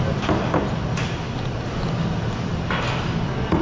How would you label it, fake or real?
real